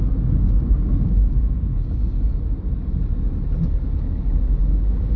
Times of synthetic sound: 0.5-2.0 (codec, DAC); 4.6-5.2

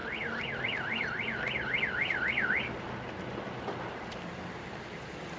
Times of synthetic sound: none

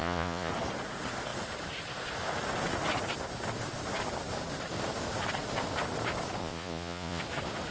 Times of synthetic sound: 0.0-0.5 (vocoder, Vocos); 6.4-7.2

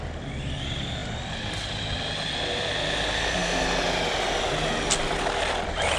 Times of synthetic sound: none